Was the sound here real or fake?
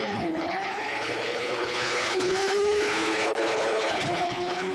fake